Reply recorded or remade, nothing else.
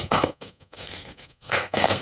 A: remade